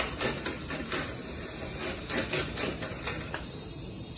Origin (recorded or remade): recorded